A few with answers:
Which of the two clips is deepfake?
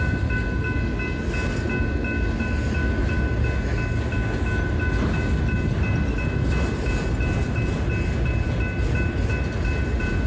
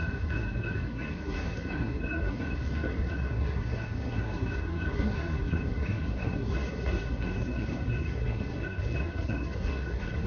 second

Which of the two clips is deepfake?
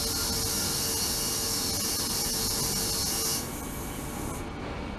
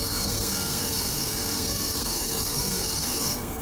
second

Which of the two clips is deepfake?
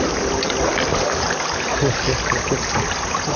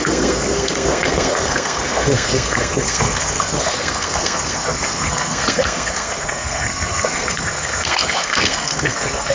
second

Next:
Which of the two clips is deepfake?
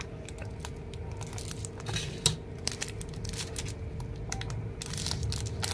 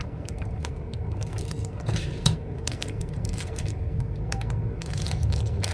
second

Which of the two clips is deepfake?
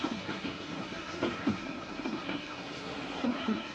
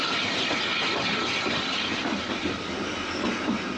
first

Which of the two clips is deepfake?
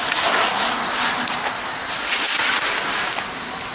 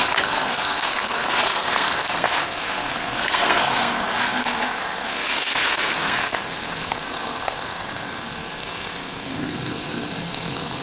second